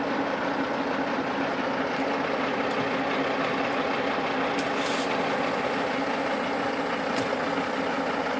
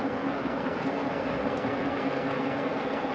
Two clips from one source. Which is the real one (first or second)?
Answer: first